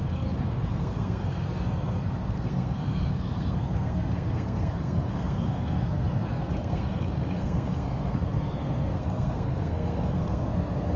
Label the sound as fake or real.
fake